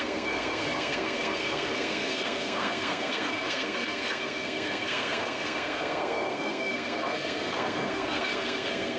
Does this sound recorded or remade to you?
remade